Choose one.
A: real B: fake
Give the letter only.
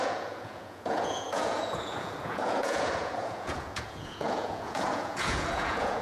B